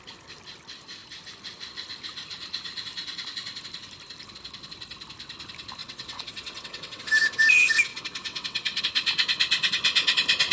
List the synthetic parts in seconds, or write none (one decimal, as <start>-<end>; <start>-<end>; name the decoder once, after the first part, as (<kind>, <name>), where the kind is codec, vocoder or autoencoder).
5.8-7.0 (vocoder, WaveNeXt); 7.9-8.8

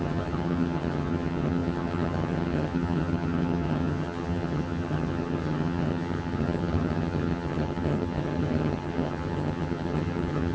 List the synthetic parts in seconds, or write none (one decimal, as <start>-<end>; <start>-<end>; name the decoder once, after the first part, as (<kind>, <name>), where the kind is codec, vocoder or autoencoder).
0.0-10.5 (vocoder, HiFi-GAN)

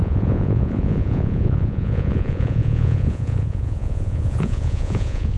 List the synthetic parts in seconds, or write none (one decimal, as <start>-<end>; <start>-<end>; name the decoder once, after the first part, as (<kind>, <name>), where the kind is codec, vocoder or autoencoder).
0.0-5.4 (vocoder, Vocos)

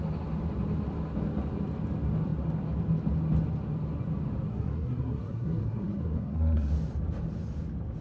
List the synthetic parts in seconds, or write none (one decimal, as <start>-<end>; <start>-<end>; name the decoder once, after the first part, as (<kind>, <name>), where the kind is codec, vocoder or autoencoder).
4.5-6.7 (codec, SNAC)

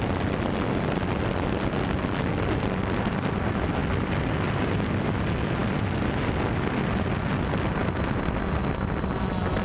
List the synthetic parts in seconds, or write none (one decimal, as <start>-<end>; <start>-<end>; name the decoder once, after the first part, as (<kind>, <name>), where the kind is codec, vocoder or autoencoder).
none